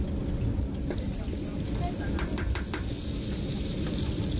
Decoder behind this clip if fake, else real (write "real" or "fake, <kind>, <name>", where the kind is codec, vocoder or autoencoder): fake, vocoder, BigVGAN v2